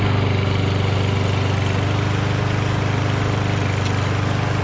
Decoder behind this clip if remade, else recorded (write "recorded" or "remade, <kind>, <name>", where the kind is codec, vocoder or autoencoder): recorded